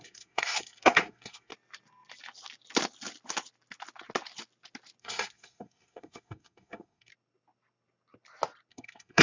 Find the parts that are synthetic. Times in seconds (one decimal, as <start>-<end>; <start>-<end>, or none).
0.0-1.5; 5.0-7.1; 8.7-9.2